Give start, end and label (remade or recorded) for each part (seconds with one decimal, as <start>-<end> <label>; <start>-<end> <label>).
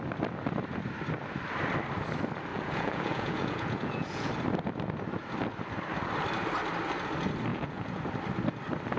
0.0-2.5 recorded; 2.5-4.3 remade; 4.3-7.5 recorded; 7.5-8.1 remade; 8.1-9.0 recorded